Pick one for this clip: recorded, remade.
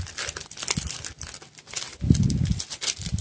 recorded